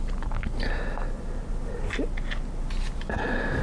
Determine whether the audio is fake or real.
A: real